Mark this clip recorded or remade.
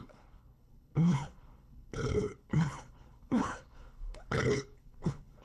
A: remade